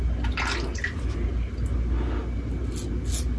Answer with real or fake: real